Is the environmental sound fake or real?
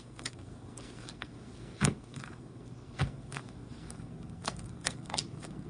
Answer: fake